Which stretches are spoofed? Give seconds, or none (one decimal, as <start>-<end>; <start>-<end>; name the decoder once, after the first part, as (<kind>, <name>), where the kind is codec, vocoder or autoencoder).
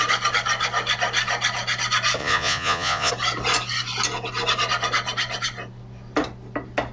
2.2-3.1 (vocoder, Vocos)